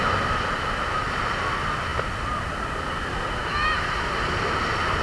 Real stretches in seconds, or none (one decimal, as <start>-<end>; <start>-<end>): 0.0-3.4; 3.9-5.0